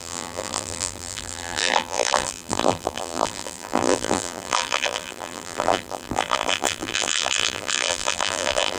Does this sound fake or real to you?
fake